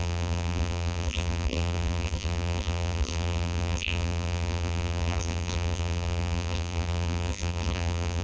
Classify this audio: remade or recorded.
remade